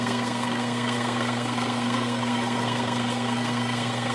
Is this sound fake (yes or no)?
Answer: yes